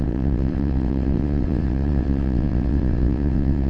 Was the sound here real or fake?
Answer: fake